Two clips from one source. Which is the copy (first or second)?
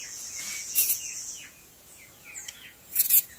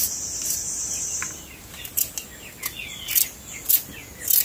first